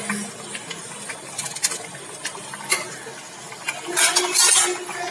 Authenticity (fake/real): real